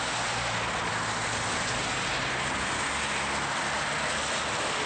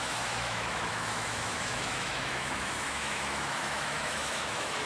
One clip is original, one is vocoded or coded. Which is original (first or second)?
first